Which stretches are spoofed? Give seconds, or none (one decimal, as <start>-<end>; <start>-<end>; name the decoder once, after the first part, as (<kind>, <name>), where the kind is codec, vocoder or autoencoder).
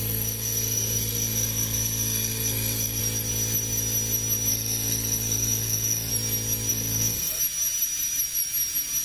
0.0-3.0 (codec, SNAC); 4.5-6.1; 6.7-7.4